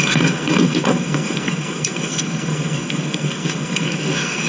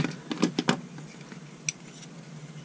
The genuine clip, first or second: second